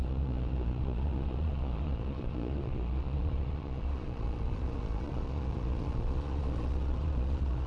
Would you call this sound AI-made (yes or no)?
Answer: yes